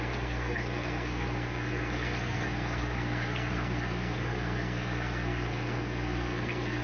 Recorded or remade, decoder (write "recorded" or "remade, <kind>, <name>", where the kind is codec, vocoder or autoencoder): remade, codec, SNAC